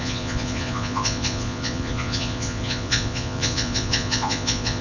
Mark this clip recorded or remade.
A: remade